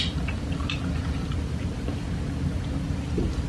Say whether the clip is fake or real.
fake